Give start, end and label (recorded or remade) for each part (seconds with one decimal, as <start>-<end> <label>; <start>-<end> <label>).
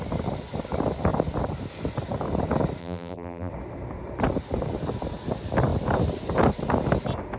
0.0-2.8 recorded; 2.8-3.5 remade; 3.5-7.4 recorded